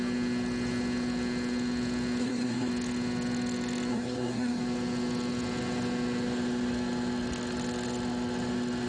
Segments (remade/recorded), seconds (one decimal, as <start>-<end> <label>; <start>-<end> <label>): 0.0-2.2 recorded; 2.2-2.7 remade; 2.7-3.9 recorded; 3.9-4.6 remade; 4.6-8.9 recorded